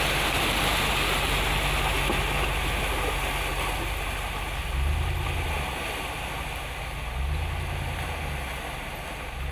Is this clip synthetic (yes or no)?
no